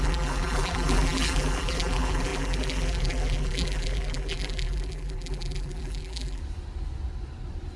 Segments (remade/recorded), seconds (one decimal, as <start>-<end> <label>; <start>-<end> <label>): 0.0-6.4 remade; 6.4-7.8 recorded